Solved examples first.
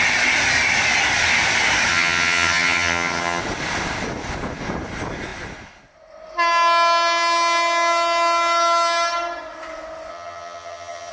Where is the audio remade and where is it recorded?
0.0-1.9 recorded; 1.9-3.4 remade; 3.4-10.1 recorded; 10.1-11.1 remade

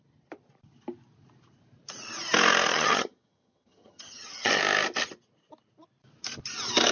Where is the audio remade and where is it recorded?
0.0-2.7 recorded; 2.7-4.6 remade; 4.6-6.9 recorded

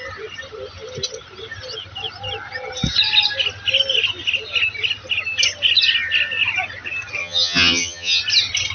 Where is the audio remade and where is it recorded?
0.0-7.2 recorded; 7.2-8.2 remade; 8.2-8.7 recorded

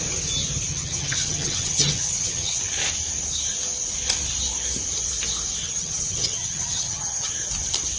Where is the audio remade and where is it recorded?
0.0-0.7 recorded; 0.7-2.6 remade; 2.6-5.6 recorded; 5.6-7.3 remade; 7.3-8.0 recorded

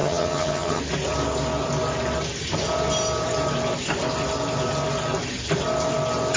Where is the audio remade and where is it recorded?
0.0-0.8 remade; 0.8-6.4 recorded

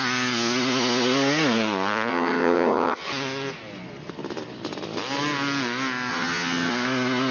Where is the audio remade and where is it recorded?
0.0-2.1 recorded; 2.1-3.1 remade; 3.1-6.1 recorded; 6.1-6.7 remade; 6.7-7.3 recorded

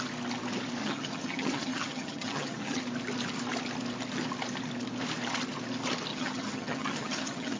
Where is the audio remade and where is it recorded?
0.0-0.8 recorded; 0.8-2.8 remade; 2.8-6.1 recorded; 6.1-7.6 remade